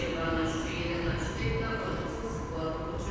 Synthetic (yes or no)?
no